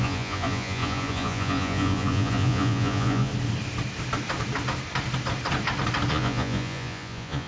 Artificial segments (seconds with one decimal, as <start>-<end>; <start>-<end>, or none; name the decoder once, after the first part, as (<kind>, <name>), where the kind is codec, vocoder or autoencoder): 0.0-3.3 (vocoder, Vocos); 6.1-7.5